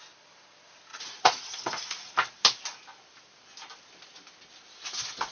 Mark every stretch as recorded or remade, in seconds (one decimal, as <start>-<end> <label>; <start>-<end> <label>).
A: 0.0-0.9 recorded; 0.9-2.1 remade; 2.1-5.3 recorded